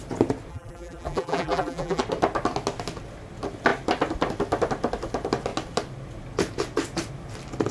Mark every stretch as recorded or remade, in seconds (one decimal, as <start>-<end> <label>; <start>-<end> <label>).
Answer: 0.0-0.5 recorded; 0.5-2.0 remade; 2.0-7.7 recorded